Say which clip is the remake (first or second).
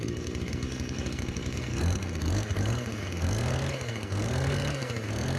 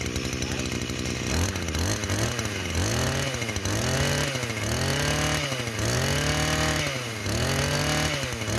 first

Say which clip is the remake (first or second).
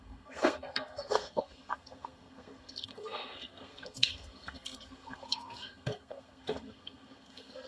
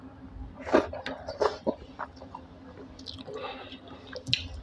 first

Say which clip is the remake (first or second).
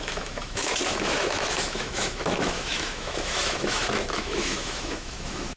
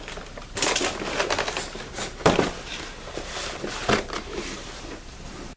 first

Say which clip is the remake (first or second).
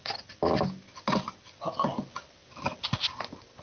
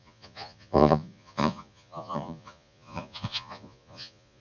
second